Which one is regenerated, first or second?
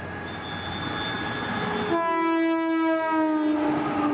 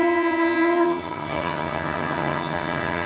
second